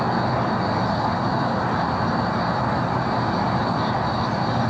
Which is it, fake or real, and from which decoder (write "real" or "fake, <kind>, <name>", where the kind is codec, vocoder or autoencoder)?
real